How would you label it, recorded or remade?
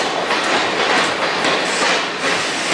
recorded